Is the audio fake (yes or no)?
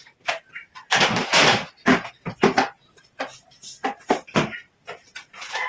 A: no